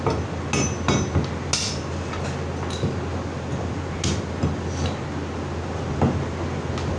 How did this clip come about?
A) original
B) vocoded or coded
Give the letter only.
A